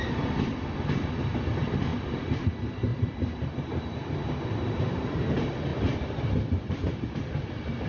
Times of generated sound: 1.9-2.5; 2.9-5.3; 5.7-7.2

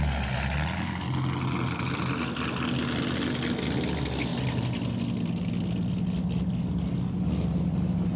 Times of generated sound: none

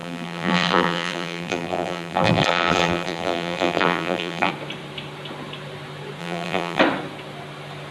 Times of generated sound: 0.0-4.5; 6.2-6.8

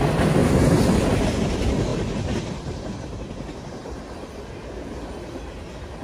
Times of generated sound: 0.4-1.2; 1.9-3.8

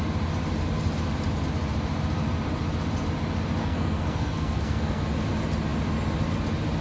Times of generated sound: 3.6-5.0

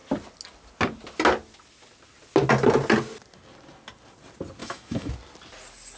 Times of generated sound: 4.6-5.1

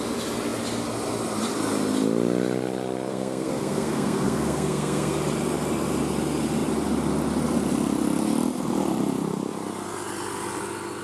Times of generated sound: 3.1-5.2

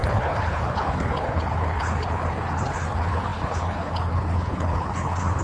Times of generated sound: 0.0-5.4